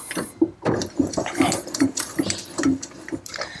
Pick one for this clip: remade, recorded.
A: remade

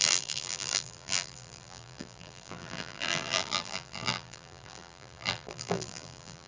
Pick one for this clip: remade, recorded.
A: remade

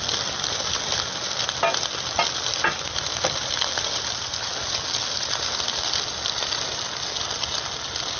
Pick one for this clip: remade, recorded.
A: recorded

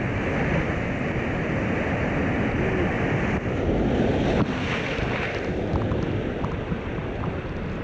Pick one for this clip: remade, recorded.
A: recorded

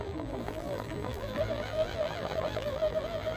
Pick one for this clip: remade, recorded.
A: remade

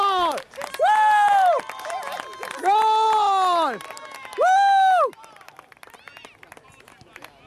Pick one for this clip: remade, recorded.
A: recorded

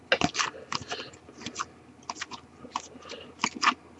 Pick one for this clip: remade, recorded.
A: recorded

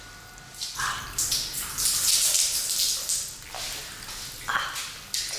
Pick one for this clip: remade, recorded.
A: recorded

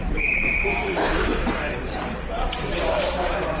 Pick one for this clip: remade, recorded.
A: remade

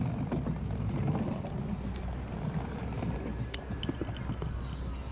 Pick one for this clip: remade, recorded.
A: recorded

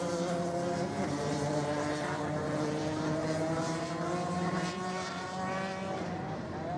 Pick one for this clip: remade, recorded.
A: remade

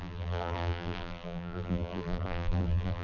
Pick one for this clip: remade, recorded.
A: remade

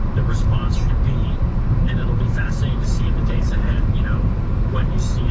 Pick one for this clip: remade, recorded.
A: remade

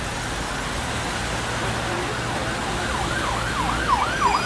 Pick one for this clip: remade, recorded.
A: recorded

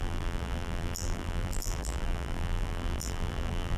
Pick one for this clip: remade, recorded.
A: remade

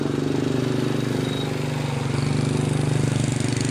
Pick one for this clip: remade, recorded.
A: recorded